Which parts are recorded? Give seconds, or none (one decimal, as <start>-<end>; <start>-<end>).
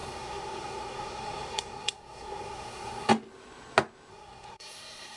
3.1-4.1